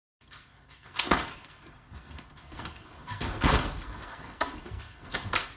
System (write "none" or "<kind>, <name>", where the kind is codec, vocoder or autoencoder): codec, SNAC